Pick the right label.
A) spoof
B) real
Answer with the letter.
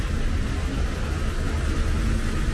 B